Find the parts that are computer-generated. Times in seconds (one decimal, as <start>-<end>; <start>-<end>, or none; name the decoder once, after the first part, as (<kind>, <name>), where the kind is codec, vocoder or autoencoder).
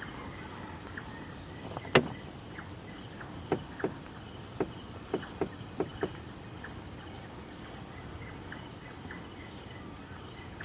none